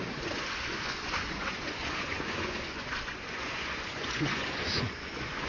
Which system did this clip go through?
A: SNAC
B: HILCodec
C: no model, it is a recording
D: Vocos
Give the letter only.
D